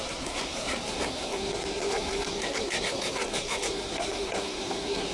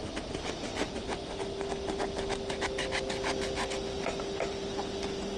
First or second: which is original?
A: second